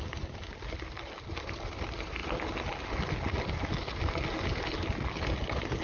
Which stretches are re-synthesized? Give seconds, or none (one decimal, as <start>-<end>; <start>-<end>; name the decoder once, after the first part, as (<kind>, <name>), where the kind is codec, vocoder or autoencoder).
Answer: none